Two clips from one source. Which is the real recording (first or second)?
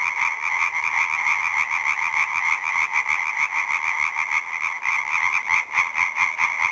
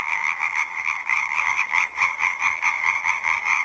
first